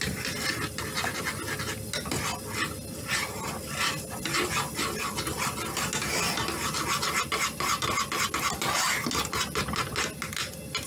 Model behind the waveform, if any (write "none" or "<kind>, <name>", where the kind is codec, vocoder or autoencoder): none